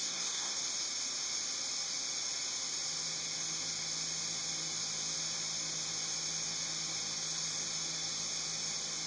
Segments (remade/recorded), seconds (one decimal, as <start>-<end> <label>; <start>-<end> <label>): 0.0-0.6 remade; 0.6-9.1 recorded